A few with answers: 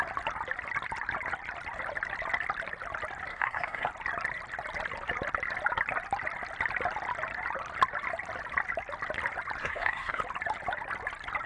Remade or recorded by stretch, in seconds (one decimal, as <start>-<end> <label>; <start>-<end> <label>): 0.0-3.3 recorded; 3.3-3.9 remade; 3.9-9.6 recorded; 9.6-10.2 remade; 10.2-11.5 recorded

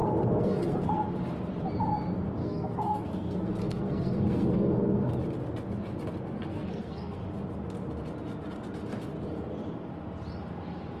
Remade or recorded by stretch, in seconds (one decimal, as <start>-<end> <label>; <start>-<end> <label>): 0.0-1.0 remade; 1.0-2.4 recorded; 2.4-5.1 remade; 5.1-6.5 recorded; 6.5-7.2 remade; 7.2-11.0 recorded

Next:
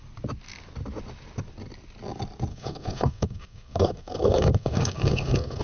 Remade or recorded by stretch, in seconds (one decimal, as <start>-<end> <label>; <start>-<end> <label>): 0.0-2.5 recorded; 2.5-5.6 remade